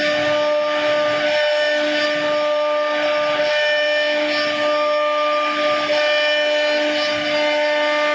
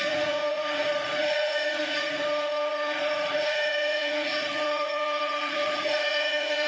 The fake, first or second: second